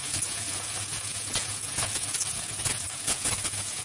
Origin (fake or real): fake